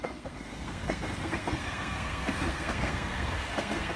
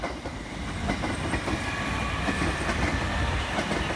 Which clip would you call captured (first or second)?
second